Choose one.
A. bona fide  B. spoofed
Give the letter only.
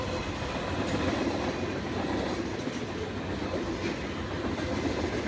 A